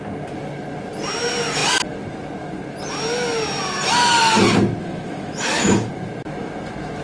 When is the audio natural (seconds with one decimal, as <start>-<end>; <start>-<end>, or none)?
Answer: 0.0-4.8; 5.9-7.0